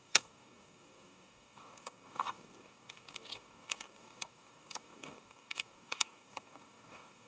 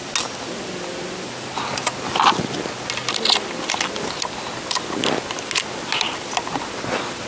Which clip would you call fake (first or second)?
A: first